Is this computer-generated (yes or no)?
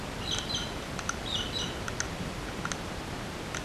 no